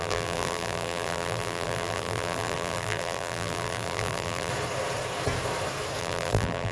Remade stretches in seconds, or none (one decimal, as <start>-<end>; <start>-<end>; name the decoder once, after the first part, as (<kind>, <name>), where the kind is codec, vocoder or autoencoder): 0.0-4.5 (vocoder, BigVGAN v2); 6.0-6.7